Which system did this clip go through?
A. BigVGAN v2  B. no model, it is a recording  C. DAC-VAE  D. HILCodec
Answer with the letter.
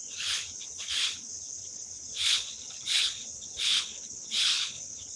D